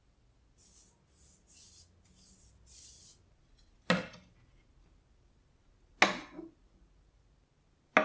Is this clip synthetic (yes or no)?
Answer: no